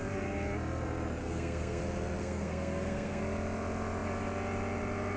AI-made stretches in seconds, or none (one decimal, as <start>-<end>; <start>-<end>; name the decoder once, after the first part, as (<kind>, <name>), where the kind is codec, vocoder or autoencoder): 1.2-1.8 (codec, SNAC); 2.2-3.2